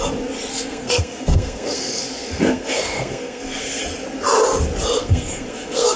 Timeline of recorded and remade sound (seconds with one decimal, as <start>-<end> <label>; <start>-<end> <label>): 0.0-0.5 recorded; 0.5-3.8 remade; 3.8-5.0 recorded; 5.0-6.0 remade